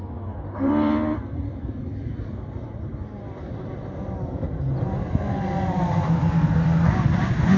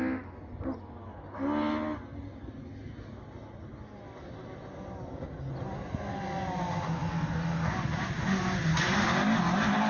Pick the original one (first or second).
second